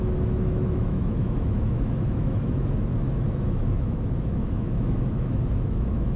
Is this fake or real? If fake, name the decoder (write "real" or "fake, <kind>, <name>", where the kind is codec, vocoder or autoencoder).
fake, autoencoder, DAC-VAE